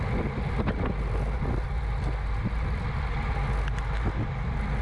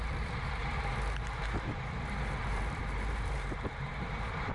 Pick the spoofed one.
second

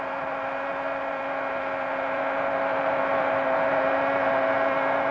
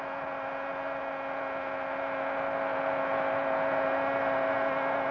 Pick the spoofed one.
first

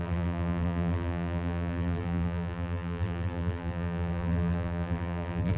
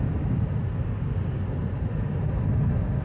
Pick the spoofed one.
first